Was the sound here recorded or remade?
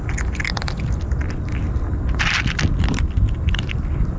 recorded